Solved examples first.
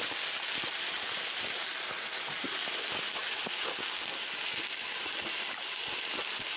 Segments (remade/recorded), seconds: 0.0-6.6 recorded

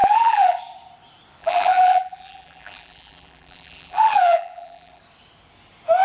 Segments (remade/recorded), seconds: 0.0-0.6 remade; 0.6-1.4 recorded; 1.4-5.0 remade; 5.0-6.0 recorded

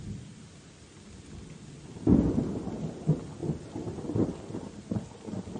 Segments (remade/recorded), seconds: 0.0-3.4 recorded; 3.4-4.4 remade; 4.4-5.6 recorded